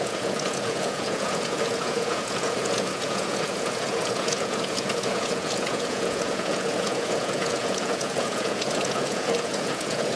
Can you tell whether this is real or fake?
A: fake